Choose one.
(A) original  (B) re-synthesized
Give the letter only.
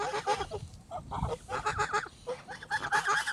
A